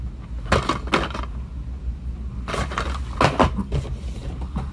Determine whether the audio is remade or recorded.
recorded